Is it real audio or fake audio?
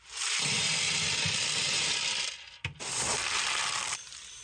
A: real